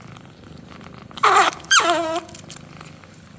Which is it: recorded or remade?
remade